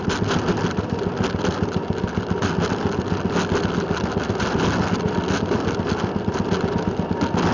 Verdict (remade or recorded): recorded